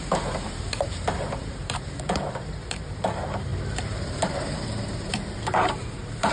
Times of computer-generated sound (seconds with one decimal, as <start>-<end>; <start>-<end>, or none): 0.0-6.3